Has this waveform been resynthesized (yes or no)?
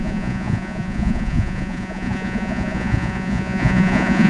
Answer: yes